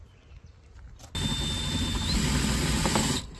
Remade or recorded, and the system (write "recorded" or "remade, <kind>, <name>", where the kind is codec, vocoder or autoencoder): recorded